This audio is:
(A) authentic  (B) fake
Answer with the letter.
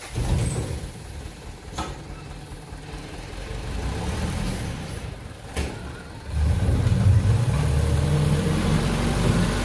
B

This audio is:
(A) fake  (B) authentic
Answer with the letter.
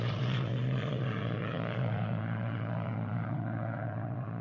A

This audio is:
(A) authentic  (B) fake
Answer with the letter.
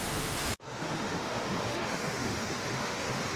B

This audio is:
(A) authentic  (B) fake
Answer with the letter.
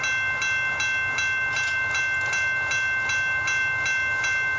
A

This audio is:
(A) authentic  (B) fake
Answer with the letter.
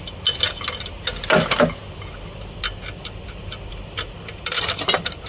A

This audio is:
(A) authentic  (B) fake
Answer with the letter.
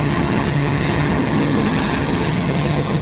B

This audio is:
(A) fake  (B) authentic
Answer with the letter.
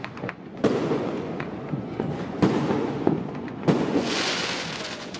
A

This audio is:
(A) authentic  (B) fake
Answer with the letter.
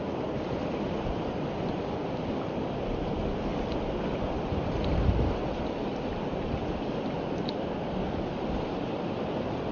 A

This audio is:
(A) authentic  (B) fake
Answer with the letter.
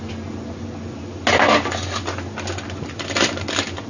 A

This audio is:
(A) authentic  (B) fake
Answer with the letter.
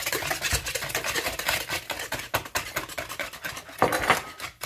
A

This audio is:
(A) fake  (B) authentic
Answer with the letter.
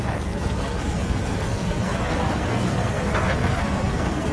A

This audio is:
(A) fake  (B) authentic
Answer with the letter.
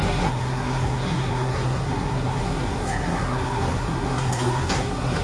A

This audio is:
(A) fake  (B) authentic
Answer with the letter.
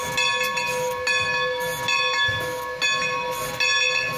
B